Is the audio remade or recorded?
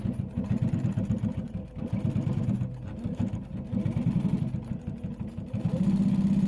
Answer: recorded